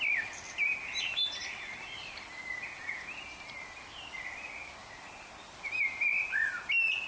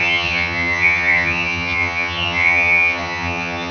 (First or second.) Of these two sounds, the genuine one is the first